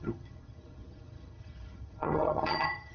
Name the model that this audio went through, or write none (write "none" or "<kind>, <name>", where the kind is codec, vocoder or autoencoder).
vocoder, HiFi-GAN